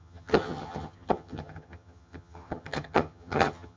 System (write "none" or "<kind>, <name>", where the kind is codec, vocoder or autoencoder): vocoder, HiFi-GAN